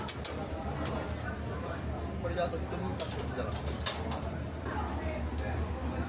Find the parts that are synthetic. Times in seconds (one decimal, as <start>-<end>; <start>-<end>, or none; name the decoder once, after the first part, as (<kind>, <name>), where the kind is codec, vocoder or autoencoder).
none